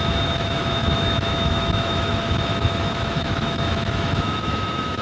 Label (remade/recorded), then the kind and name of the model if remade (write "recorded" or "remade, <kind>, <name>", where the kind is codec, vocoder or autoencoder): remade, autoencoder, DAC-VAE